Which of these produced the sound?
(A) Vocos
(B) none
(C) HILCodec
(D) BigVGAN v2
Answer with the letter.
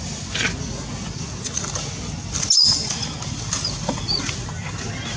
B